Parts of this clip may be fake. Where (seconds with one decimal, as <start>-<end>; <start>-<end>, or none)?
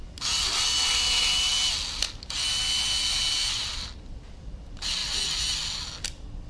none